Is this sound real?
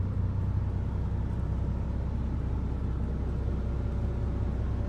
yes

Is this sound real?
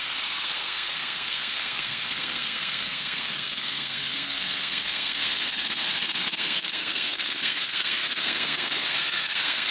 no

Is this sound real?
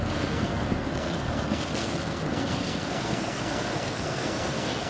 no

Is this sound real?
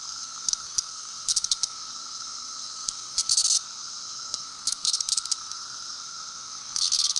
no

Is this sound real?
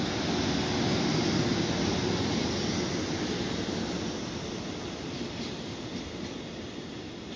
yes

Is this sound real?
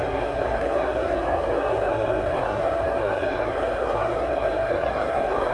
no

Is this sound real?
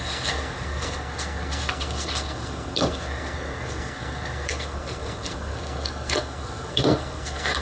no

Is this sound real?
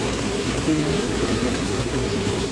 no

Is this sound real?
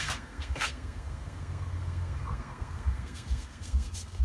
no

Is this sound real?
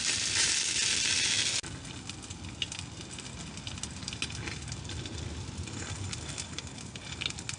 yes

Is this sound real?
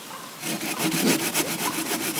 yes